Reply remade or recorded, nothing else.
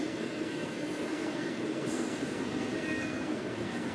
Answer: remade